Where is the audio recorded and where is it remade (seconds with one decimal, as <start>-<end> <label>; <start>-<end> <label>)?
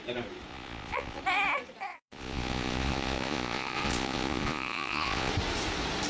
0.0-0.5 recorded; 0.5-1.2 remade; 1.2-1.9 recorded; 1.9-5.3 remade; 5.3-6.1 recorded